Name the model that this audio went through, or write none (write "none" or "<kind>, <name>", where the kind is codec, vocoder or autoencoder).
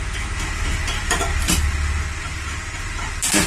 none